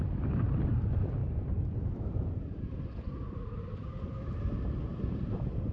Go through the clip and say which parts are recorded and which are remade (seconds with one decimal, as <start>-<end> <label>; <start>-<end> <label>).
0.0-5.7 recorded